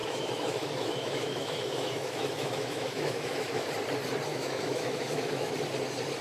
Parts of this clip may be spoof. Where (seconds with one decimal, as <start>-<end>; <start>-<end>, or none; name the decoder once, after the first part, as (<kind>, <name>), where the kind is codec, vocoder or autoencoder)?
0.0-3.7 (autoencoder, DAC-VAE); 4.3-5.5